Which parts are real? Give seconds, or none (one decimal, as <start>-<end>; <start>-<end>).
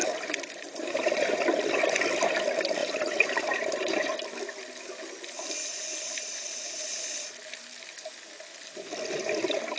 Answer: 1.1-2.8; 4.1-9.8